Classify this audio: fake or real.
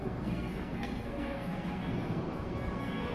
fake